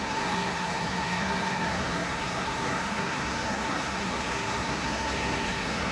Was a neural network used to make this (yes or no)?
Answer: yes